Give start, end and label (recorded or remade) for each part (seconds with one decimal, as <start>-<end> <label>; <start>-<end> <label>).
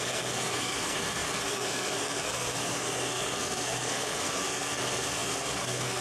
0.0-6.0 remade